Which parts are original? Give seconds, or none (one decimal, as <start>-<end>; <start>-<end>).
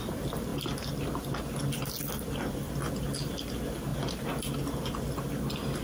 0.0-5.8